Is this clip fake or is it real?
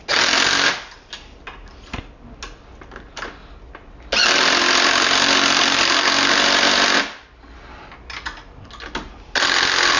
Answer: real